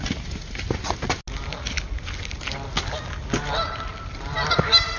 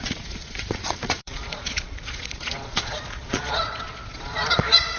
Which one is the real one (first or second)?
first